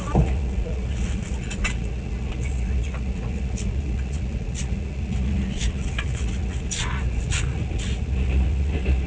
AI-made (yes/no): yes